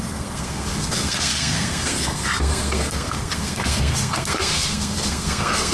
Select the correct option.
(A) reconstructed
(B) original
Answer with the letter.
A